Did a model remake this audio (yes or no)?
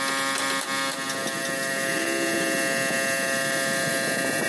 no